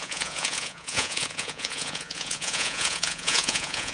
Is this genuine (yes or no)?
no